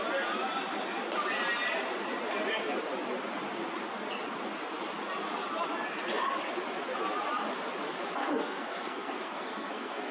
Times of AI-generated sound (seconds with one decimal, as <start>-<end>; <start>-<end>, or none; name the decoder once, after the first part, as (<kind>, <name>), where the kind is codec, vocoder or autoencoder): 8.2-10.1 (codec, SNAC)